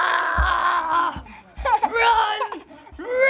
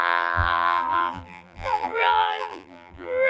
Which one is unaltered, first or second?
first